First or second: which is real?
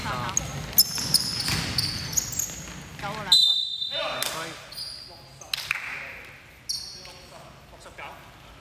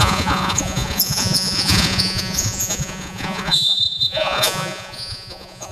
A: first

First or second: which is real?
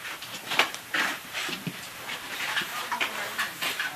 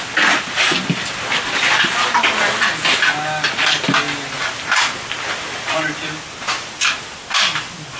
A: second